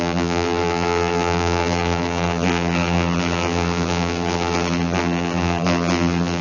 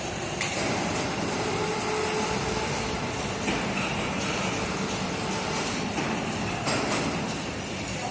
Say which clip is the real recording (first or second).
second